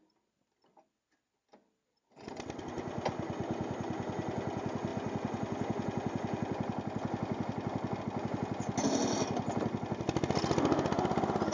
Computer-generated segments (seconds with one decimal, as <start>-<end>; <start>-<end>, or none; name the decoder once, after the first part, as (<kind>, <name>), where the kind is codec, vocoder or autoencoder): none